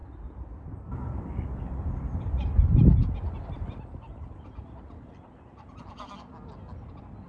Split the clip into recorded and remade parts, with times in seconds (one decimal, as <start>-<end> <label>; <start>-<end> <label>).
0.0-7.3 recorded